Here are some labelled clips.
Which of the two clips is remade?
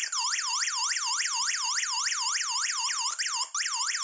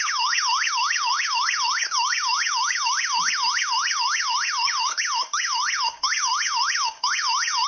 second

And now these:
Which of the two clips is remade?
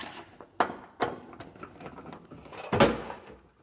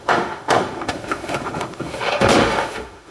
second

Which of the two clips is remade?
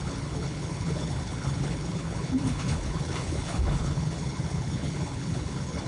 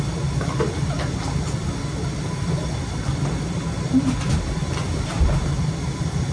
first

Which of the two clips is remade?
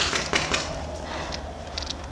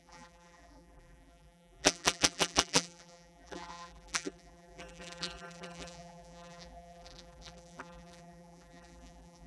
second